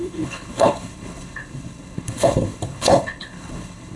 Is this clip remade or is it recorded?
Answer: remade